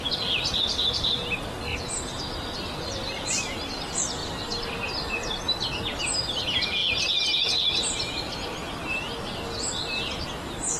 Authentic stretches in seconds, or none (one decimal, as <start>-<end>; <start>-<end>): 0.0-1.7; 2.3-10.8